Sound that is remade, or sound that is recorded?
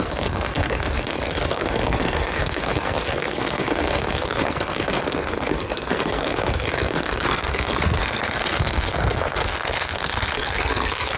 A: remade